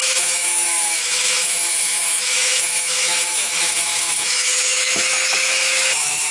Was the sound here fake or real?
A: fake